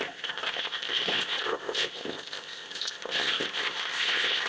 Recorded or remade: remade